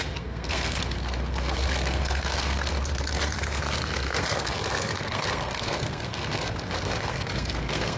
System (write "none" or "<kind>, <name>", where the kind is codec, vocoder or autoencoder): codec, SNAC